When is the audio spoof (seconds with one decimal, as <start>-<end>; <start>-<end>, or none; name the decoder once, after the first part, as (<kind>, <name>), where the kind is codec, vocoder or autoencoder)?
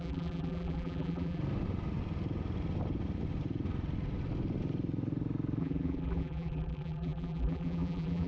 0.0-1.4 (vocoder, BigVGAN v2); 5.6-8.3